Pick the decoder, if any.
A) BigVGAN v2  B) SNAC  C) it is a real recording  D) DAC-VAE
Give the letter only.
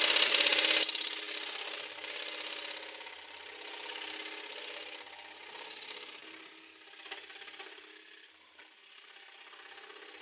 C